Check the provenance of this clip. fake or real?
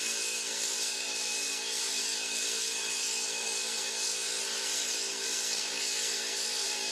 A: fake